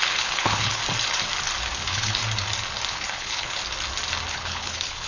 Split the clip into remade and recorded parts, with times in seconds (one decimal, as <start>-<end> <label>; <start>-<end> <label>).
0.0-0.8 remade; 0.8-1.8 recorded; 1.8-2.2 remade; 2.2-2.9 recorded; 2.9-3.6 remade; 3.6-4.3 recorded; 4.3-5.1 remade